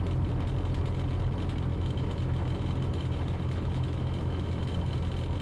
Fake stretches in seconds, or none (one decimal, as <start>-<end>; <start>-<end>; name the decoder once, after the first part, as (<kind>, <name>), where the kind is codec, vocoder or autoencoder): 1.7-4.9 (autoencoder, DAC-VAE)